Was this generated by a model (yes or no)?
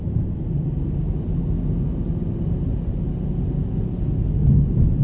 no